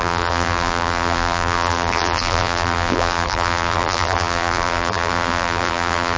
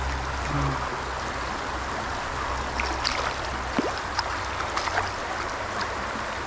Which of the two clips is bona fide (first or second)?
second